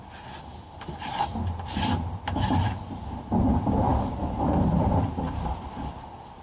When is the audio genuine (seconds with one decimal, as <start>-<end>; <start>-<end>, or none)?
0.0-3.9; 5.4-6.4